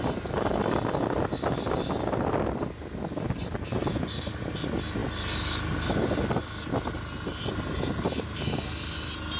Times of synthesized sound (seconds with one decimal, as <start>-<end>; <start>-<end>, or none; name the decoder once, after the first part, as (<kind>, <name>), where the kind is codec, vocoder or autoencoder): none